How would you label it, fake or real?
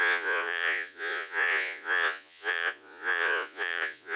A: fake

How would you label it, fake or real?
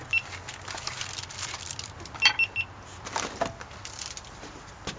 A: real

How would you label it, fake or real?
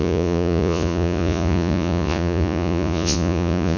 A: fake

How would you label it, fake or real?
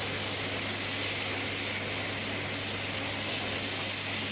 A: real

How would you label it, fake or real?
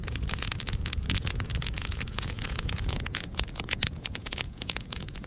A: fake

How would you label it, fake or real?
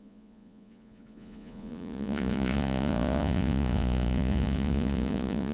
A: fake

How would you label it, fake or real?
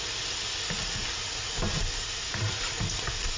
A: real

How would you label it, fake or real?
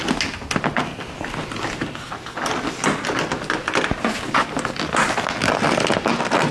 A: real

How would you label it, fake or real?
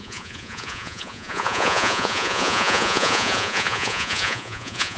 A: fake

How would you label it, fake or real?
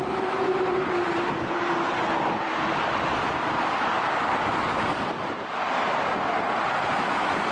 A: real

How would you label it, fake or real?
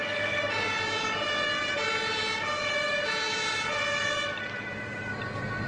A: real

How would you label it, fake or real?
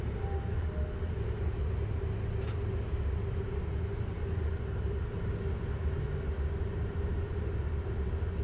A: real